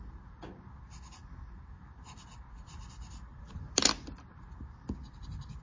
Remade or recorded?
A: recorded